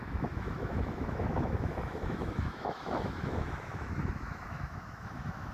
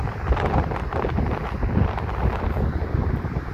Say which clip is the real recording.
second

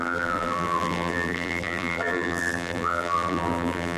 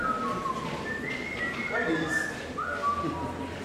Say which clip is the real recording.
second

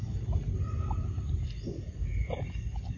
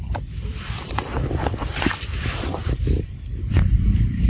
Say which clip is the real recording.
first